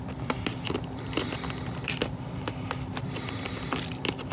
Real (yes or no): no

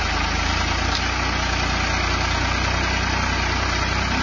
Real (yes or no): yes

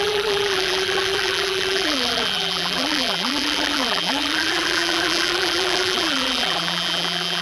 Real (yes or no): no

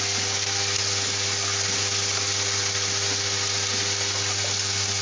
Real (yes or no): yes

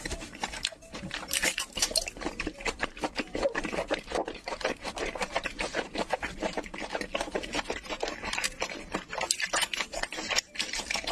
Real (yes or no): no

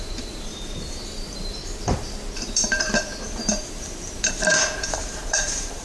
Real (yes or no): no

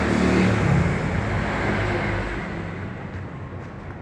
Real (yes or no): yes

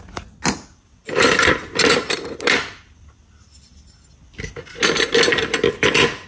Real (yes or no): yes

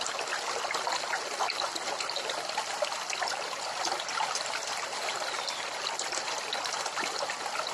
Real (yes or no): yes